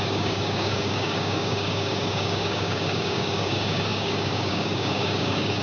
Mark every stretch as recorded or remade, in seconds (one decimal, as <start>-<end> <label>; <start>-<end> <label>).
0.0-5.6 remade